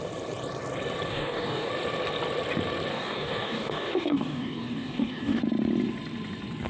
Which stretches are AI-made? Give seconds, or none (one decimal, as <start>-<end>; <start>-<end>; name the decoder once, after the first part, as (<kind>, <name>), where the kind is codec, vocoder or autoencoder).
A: 1.1-1.7 (codec, DAC); 2.9-5.4